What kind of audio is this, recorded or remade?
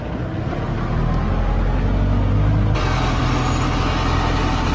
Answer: recorded